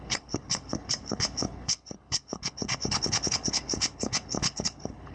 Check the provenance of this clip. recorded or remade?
remade